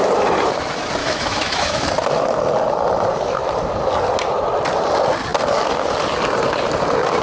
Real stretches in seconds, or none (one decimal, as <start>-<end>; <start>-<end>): 0.0-1.0; 1.9-7.2